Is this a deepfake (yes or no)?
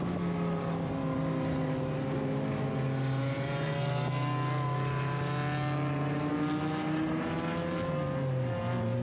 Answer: no